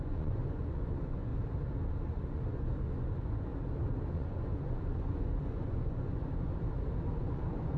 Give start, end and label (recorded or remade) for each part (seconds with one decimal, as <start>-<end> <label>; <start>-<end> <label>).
0.0-1.3 remade; 1.3-2.1 recorded; 2.1-3.5 remade; 3.5-4.1 recorded; 4.1-6.5 remade; 6.5-7.2 recorded; 7.2-7.8 remade